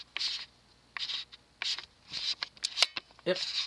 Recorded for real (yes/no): yes